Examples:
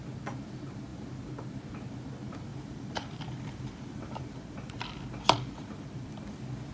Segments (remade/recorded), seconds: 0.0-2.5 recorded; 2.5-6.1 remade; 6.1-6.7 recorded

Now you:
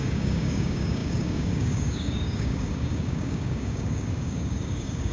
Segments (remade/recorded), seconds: 0.0-5.1 remade